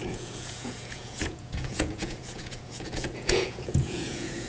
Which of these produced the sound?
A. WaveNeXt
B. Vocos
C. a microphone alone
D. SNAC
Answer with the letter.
B